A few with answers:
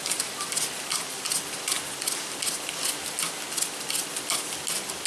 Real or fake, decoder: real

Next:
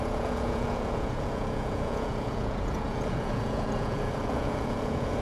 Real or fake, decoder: fake, vocoder, Vocos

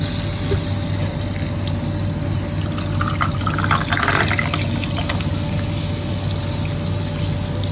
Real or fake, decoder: real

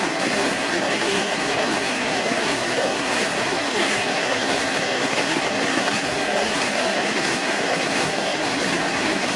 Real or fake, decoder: fake, codec, SNAC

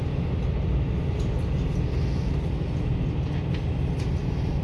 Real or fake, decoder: real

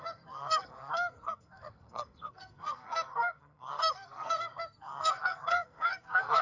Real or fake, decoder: fake, codec, SNAC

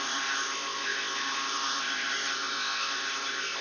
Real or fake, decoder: fake, codec, ZipCodec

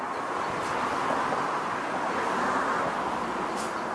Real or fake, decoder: real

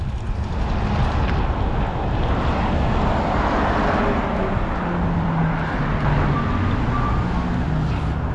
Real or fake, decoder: real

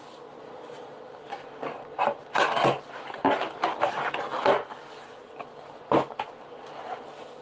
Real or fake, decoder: real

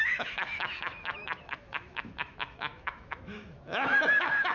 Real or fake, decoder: fake, autoencoder, DAC-VAE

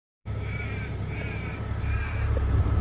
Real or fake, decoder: fake, vocoder, BigVGAN v2